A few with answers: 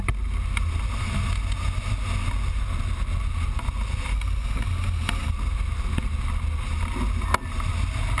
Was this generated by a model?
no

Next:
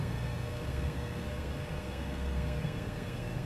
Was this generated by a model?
yes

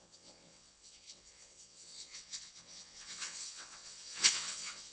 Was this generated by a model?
yes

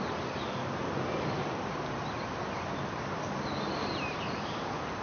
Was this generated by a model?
no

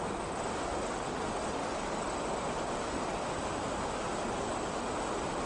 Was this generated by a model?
no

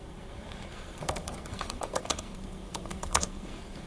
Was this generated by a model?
yes